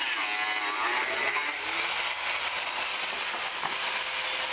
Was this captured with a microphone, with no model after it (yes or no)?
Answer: yes